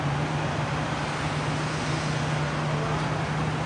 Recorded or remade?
recorded